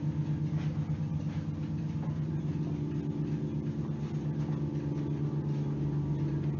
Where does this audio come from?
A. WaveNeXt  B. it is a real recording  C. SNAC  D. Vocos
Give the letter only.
B